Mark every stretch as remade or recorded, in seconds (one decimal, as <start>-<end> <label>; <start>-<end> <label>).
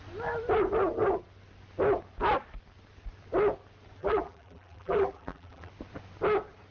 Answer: 0.0-4.0 recorded; 4.0-5.7 remade; 5.7-6.7 recorded